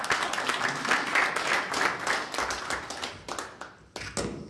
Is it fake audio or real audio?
real